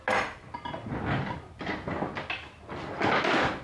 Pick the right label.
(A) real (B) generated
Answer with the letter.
A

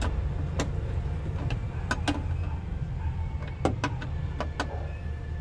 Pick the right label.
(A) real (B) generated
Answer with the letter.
A